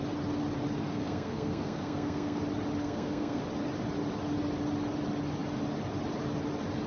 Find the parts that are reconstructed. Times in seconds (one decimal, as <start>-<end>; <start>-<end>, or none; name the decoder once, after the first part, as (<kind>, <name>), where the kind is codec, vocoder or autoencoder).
0.9-2.4 (codec, SNAC); 2.8-3.4